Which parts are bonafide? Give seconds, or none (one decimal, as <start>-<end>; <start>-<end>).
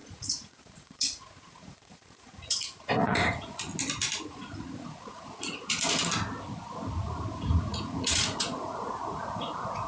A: 3.7-4.2; 6.0-7.3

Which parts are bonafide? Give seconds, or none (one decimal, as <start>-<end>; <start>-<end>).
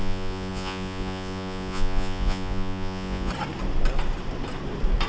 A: 3.3-5.1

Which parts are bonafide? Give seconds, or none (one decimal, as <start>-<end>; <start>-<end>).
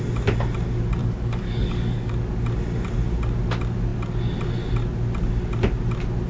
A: 0.0-1.0; 2.1-6.3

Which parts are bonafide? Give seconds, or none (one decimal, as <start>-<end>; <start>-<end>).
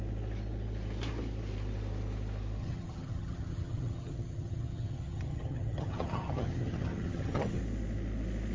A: 0.0-2.6; 7.6-8.5